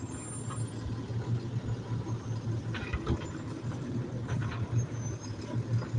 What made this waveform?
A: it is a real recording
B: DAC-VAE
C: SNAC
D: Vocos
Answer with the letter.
A